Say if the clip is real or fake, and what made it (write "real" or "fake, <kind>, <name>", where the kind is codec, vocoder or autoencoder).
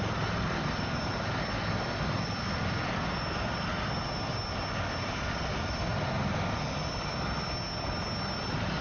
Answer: real